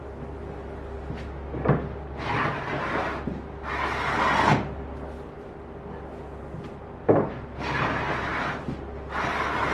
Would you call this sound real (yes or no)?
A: yes